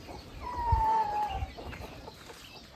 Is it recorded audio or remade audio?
remade